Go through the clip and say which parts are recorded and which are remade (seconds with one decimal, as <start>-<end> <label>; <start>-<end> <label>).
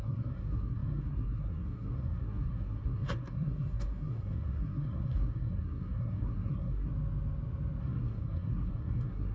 0.0-6.9 remade; 6.9-7.8 recorded; 7.8-9.3 remade